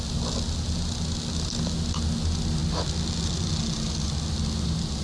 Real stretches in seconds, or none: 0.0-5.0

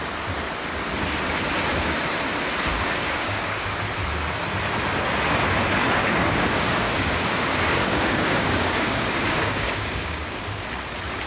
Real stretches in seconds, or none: 0.0-2.7; 3.8-6.0; 10.4-11.3

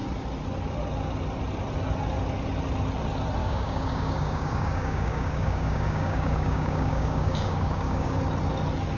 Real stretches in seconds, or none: 0.0-3.4; 8.2-9.0

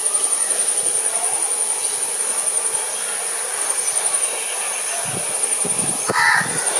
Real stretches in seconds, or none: 0.0-6.8

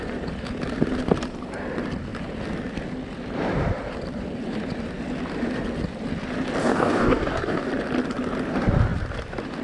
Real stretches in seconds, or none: 0.0-6.6; 7.7-9.6